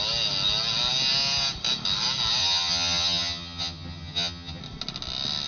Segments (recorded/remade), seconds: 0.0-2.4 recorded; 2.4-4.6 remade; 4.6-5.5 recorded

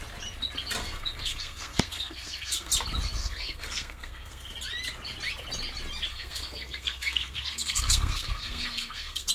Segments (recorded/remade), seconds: 0.0-0.8 recorded; 0.8-2.7 remade; 2.7-3.2 recorded; 3.2-4.5 remade; 4.5-6.1 recorded; 6.1-9.3 remade

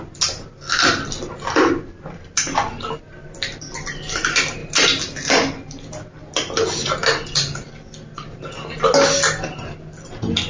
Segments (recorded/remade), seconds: 0.0-10.5 recorded

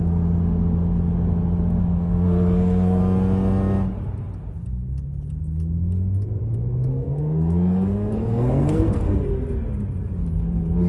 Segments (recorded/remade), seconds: 0.0-1.8 recorded; 1.8-3.0 remade; 3.0-6.9 recorded; 6.9-9.2 remade; 9.2-10.9 recorded

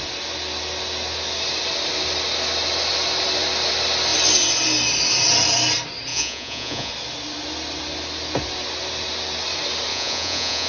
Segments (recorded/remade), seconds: 0.0-6.1 recorded; 6.1-6.9 remade; 6.9-9.9 recorded; 9.9-10.7 remade